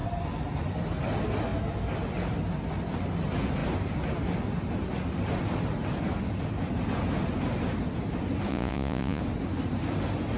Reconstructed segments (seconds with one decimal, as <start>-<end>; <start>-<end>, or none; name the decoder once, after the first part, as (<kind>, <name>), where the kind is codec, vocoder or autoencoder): 8.5-9.2 (vocoder, Vocos)